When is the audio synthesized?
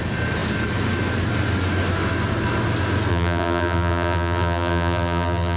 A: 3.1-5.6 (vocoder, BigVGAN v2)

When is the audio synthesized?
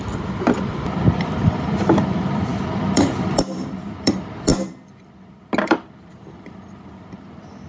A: 0.0-7.7 (vocoder, BigVGAN v2)